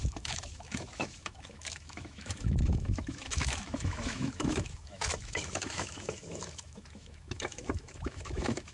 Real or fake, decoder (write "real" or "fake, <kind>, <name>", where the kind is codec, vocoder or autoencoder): fake, autoencoder, DAC-VAE